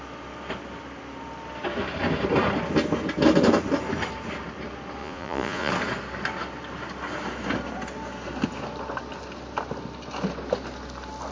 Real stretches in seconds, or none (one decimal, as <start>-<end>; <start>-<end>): 0.0-5.0; 5.7-11.3